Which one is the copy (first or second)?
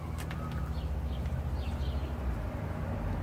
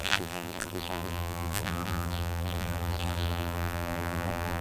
second